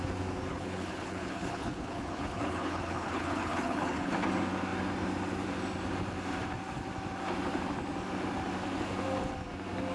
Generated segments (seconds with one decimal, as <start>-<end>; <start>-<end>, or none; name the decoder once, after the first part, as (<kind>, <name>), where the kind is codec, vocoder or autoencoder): 0.5-4.1 (codec, HILCodec)